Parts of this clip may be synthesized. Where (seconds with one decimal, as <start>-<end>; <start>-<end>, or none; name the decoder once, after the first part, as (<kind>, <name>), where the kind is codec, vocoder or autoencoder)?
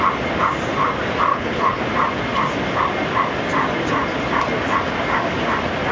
1.3-1.8 (codec, HILCodec)